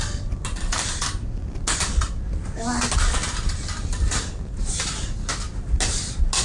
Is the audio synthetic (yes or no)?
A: no